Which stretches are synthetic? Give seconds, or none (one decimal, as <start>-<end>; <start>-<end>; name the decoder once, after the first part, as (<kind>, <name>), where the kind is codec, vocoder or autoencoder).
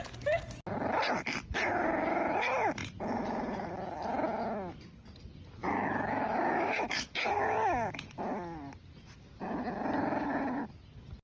5.6-7.3 (autoencoder, DAC-VAE)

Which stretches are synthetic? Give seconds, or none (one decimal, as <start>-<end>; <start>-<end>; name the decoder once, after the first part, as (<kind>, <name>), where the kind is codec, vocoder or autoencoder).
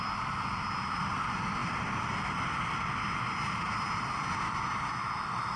none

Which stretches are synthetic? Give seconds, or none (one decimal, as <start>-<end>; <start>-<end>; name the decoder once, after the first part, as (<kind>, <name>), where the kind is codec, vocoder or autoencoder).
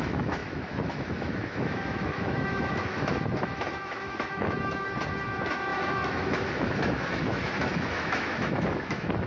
0.0-9.3 (autoencoder, DAC-VAE)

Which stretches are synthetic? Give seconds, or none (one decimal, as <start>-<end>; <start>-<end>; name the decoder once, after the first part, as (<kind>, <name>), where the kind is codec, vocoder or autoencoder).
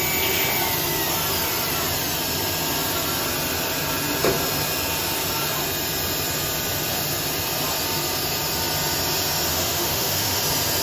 9.5-10.4 (autoencoder, DAC-VAE)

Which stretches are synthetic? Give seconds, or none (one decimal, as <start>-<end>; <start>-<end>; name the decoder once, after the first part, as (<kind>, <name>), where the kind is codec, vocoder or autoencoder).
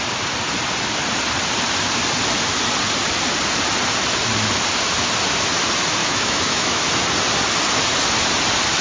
6.0-6.8 (autoencoder, DAC-VAE)